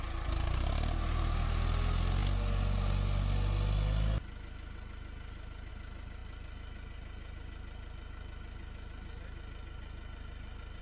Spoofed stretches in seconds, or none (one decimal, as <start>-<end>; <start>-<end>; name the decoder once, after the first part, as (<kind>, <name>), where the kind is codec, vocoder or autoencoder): none